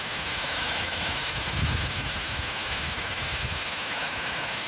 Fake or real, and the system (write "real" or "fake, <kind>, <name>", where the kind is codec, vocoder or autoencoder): fake, autoencoder, DAC-VAE